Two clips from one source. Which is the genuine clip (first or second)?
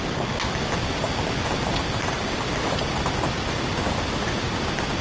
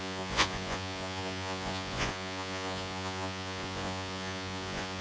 first